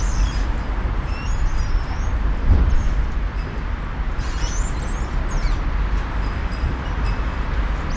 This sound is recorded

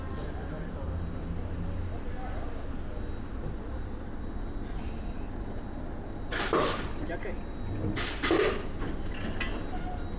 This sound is recorded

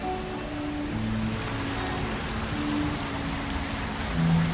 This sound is recorded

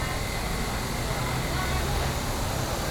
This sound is recorded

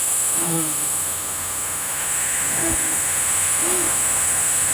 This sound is remade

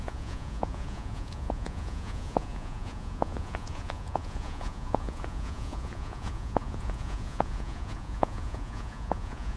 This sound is remade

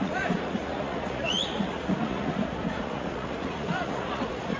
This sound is remade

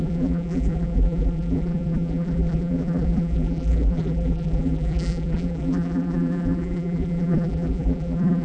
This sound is remade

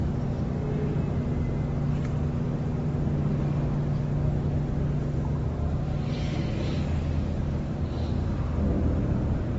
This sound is recorded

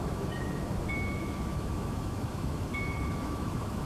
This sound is remade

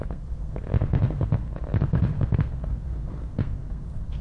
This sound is remade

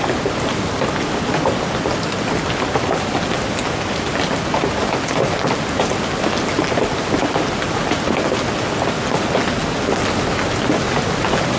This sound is recorded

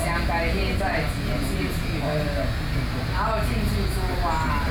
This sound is recorded